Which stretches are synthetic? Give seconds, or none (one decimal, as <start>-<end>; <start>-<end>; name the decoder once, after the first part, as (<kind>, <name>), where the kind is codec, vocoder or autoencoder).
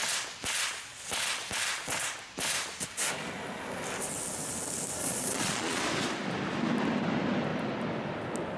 5.0-5.8 (vocoder, Vocos)